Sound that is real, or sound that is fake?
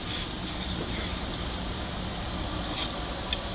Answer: real